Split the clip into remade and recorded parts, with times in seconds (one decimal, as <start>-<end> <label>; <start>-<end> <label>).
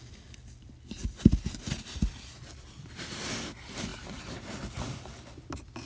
0.0-5.9 recorded